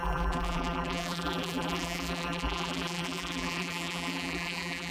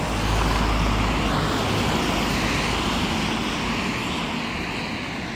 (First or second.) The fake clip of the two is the first